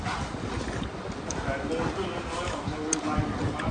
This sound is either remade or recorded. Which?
recorded